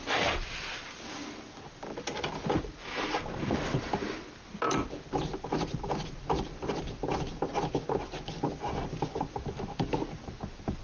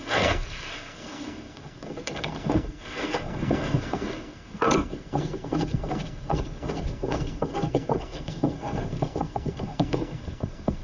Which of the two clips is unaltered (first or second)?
first